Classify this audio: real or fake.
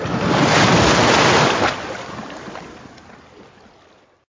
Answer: real